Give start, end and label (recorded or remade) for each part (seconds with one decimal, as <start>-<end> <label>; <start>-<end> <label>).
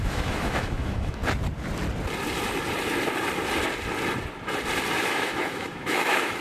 0.0-1.2 remade; 1.2-5.0 recorded; 5.0-6.4 remade